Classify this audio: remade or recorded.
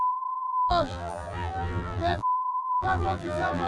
remade